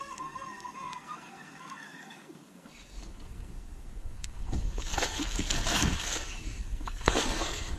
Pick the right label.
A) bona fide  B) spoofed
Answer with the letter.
B